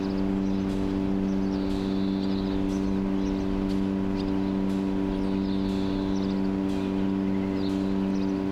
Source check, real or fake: real